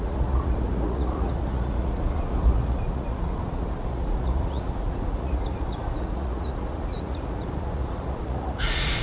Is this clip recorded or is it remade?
remade